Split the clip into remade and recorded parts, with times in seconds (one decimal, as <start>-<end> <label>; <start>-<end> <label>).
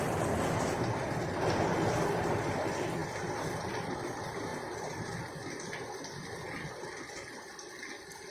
0.0-8.3 recorded